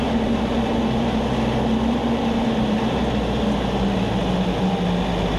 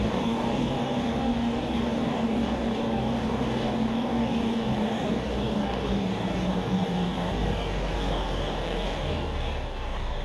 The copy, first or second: second